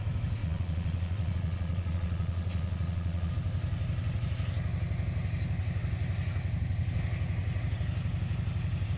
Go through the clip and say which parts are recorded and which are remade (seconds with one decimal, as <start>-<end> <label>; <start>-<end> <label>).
0.0-0.4 recorded; 0.4-3.3 remade; 3.3-9.0 recorded

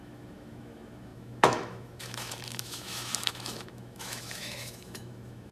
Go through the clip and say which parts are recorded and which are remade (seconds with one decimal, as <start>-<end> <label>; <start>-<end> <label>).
0.0-5.5 remade

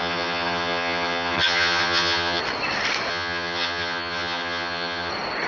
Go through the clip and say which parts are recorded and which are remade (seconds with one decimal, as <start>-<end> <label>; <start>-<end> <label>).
0.0-2.4 remade; 2.4-3.1 recorded; 3.1-5.1 remade; 5.1-5.5 recorded